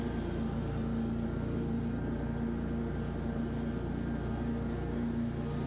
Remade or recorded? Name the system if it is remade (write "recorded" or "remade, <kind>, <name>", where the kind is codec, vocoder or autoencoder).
recorded